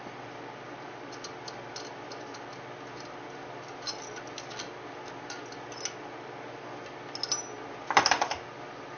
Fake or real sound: real